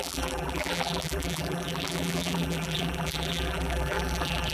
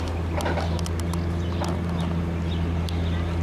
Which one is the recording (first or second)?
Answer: second